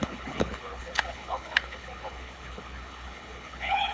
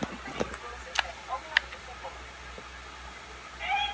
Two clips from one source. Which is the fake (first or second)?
first